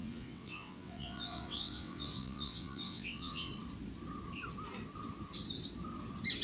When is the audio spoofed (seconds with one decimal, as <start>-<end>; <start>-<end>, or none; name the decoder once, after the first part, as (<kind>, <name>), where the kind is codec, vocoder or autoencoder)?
0.0-3.5 (vocoder, WaveNeXt)